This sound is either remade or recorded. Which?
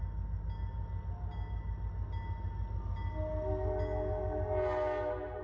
recorded